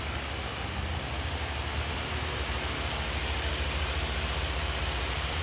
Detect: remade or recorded recorded